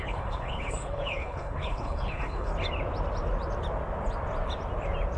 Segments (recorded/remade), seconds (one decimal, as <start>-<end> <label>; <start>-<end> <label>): 0.0-2.5 remade; 2.5-5.2 recorded